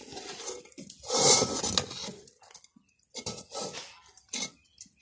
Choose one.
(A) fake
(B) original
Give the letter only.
B